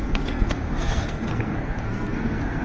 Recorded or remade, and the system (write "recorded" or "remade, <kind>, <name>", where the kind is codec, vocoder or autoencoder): remade, codec, SNAC